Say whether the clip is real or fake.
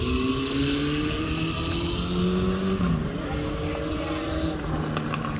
real